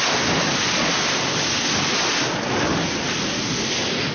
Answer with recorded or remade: recorded